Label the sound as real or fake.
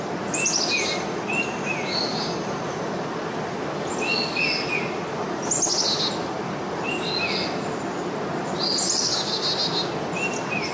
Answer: real